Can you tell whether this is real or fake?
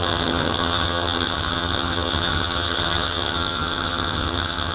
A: fake